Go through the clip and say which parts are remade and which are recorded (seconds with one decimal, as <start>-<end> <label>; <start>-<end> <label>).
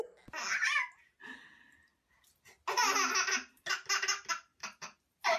0.0-4.5 recorded; 4.5-5.4 remade